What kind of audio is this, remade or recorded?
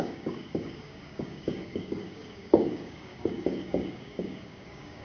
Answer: remade